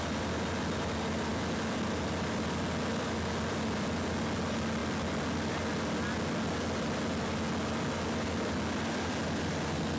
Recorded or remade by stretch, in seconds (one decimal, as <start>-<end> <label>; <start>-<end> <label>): 0.0-10.0 recorded